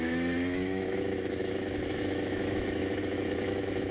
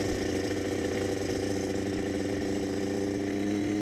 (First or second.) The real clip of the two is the second